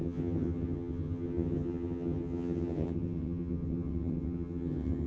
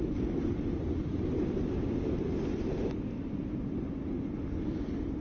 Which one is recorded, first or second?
second